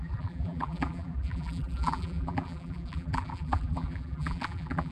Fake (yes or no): yes